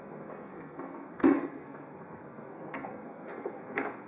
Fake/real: fake